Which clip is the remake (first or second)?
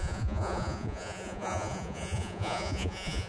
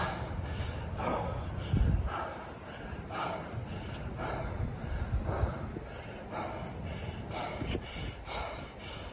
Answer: first